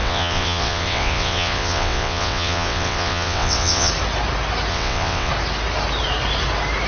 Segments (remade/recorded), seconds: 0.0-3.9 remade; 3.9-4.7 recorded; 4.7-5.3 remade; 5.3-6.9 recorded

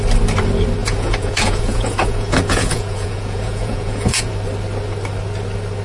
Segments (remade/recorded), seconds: 0.0-0.8 recorded; 0.8-4.3 remade; 4.3-5.8 recorded

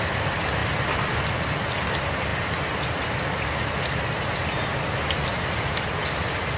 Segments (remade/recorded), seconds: 0.0-6.6 recorded

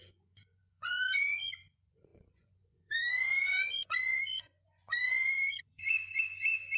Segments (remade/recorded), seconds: 0.0-6.8 remade

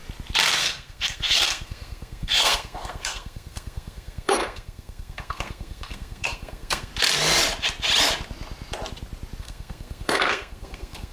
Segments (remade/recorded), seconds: 0.0-0.6 recorded; 0.6-6.9 remade; 6.9-9.4 recorded; 9.4-11.1 remade

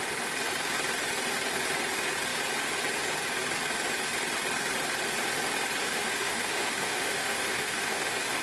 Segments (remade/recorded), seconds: 0.0-5.8 recorded; 5.8-8.4 remade

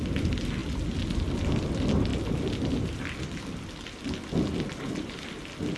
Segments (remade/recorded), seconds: 0.0-5.8 recorded